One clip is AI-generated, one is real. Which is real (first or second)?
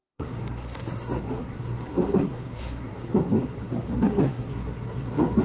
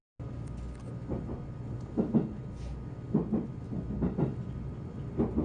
second